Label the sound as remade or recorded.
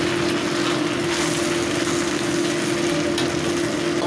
recorded